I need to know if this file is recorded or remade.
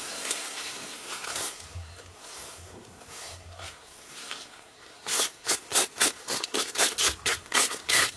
remade